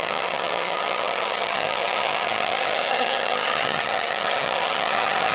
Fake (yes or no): yes